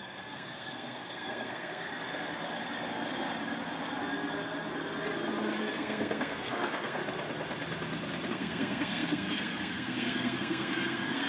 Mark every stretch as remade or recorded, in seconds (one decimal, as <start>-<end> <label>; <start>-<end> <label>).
0.0-1.9 remade; 1.9-5.6 recorded; 5.6-7.0 remade; 7.0-8.3 recorded; 8.3-11.3 remade